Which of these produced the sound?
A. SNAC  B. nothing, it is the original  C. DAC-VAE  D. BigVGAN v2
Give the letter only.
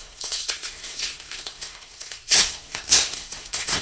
A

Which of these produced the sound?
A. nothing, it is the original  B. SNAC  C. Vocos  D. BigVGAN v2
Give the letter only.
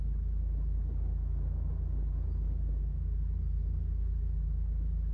A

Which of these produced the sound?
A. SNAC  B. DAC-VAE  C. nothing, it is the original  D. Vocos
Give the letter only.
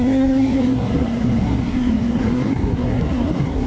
A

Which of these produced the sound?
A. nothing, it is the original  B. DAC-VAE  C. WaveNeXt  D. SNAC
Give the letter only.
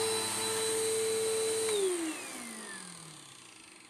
A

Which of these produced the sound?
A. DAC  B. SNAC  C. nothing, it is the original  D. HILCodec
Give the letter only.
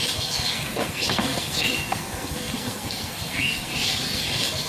B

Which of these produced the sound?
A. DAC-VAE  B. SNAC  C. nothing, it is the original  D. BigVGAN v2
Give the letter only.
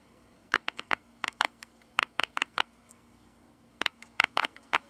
B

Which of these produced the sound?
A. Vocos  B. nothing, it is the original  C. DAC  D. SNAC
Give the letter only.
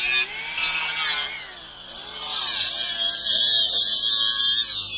B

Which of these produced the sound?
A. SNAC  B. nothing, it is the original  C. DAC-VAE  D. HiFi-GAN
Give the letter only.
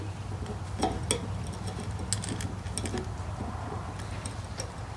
B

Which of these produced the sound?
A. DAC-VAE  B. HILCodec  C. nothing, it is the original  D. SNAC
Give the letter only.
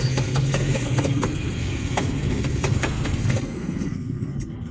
D